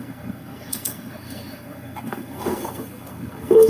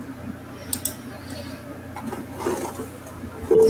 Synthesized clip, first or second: first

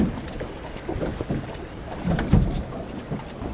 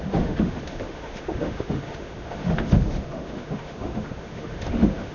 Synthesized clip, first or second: second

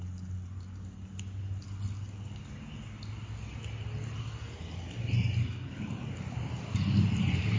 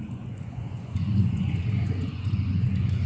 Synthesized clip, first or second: second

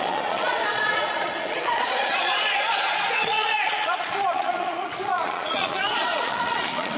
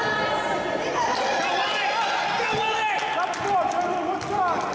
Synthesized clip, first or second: first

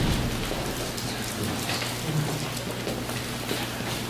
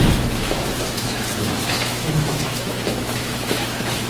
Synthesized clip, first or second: second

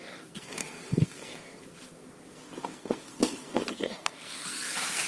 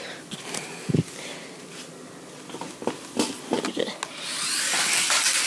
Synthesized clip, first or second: first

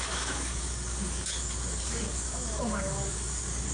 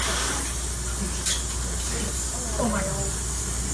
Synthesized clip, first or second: first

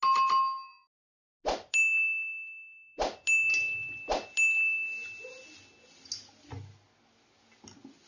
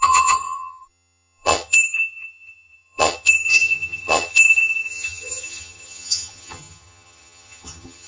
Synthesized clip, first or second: second